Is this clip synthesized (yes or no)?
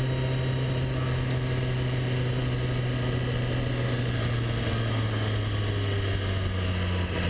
no